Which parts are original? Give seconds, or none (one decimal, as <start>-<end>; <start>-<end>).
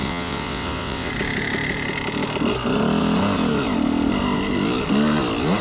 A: 1.1-5.6